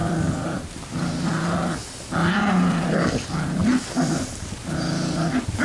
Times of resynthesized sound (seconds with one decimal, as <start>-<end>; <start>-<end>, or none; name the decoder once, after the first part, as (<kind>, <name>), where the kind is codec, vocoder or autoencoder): 0.0-1.0 (vocoder, BigVGAN v2); 3.6-4.2